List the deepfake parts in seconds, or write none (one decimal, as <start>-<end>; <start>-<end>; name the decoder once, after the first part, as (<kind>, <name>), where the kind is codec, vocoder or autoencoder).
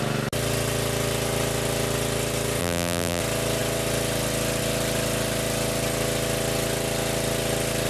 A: 2.6-3.2 (vocoder, BigVGAN v2)